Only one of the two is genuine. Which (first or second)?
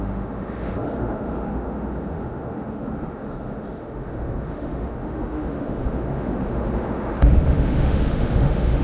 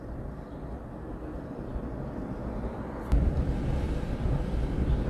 second